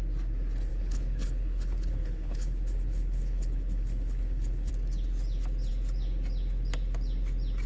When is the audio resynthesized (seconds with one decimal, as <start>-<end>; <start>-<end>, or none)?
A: 0.7-4.7